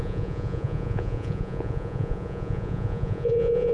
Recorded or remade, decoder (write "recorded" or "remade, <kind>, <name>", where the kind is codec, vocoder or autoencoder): remade, vocoder, Vocos